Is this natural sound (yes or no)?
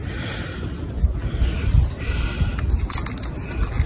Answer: yes